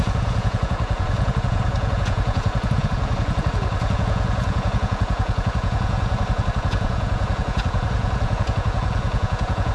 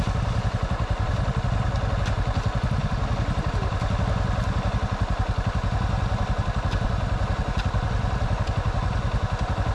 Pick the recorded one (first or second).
second